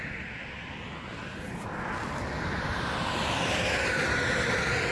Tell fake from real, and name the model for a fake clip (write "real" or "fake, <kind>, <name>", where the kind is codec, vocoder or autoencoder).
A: real